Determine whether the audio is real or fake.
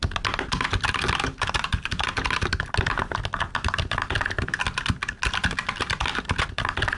real